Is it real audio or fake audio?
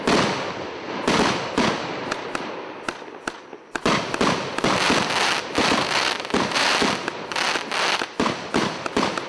real